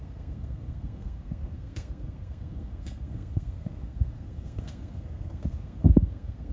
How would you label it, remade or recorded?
remade